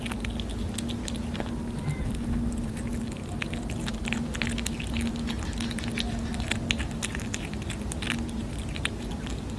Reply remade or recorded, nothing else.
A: recorded